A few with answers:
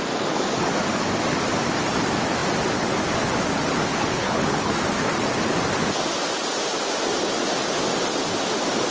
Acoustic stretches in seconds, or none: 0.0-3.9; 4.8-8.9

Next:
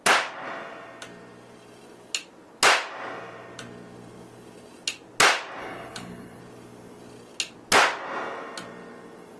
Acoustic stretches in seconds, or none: 0.0-5.6; 6.4-9.4